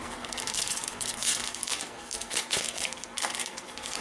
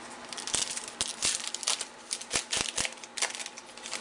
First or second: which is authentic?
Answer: second